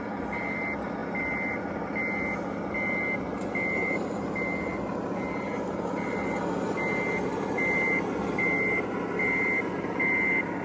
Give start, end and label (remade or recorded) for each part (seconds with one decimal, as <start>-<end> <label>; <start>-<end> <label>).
0.0-10.6 recorded